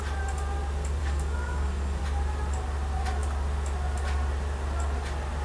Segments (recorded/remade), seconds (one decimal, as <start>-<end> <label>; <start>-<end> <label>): 0.0-1.0 recorded; 1.0-2.0 remade; 2.0-5.4 recorded